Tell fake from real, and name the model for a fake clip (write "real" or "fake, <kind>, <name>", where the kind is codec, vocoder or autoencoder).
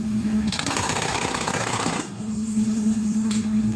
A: fake, codec, SNAC